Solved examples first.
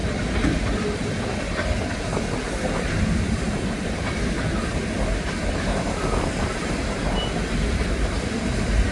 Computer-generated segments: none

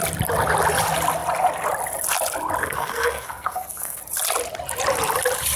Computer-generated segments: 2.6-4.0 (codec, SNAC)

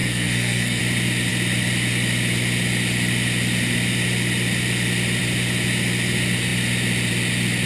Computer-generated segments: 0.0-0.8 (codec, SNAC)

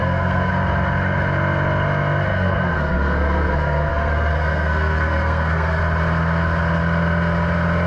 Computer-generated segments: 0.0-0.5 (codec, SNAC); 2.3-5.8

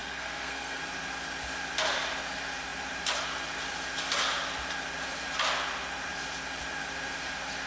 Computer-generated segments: 0.0-0.8 (codec, SNAC)

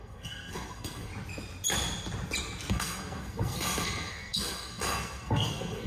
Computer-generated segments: 0.0-1.1 (codec, SNAC); 2.7-5.9

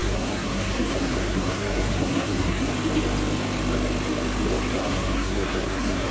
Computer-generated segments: 0.0-2.7 (codec, SNAC); 4.7-6.1

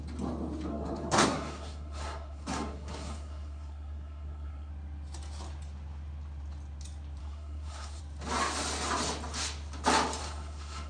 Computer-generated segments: 0.7-4.7 (codec, SNAC); 7.2-8.0; 10.2-10.9